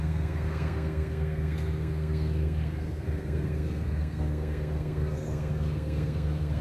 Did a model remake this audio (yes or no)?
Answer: yes